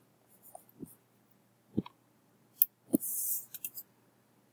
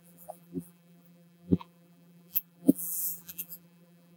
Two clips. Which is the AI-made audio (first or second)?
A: second